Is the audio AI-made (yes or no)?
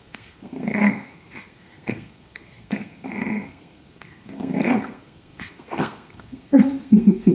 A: yes